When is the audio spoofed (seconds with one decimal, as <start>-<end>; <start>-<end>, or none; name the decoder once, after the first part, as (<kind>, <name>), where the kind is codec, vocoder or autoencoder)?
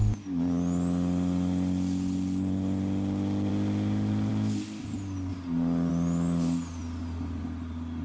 none